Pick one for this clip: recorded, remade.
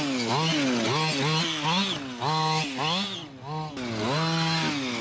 recorded